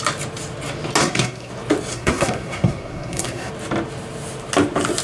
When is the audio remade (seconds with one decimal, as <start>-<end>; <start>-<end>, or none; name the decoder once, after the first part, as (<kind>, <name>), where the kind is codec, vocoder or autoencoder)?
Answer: 1.0-1.5 (codec, SNAC); 1.9-3.5